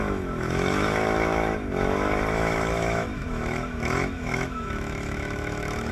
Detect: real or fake fake